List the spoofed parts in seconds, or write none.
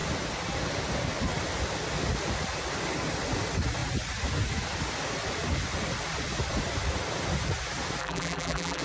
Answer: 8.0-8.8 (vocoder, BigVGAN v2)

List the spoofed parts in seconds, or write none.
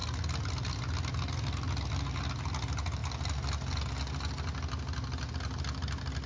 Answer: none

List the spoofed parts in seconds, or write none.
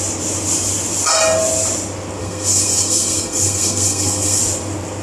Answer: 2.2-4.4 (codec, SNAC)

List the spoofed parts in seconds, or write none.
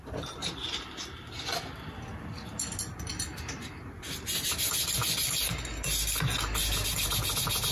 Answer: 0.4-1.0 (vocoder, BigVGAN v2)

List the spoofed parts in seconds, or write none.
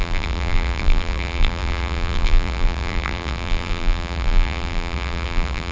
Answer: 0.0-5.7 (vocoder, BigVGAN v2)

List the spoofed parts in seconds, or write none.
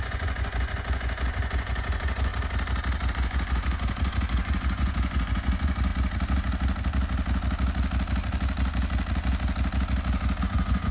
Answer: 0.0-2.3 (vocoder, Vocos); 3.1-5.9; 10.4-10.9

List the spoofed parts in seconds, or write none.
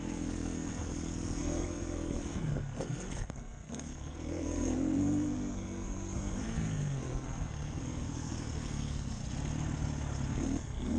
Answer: 0.0-9.2 (codec, SNAC); 10.3-11.0